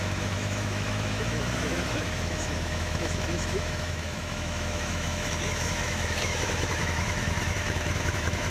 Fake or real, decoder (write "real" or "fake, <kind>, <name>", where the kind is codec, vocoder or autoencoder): fake, autoencoder, DAC-VAE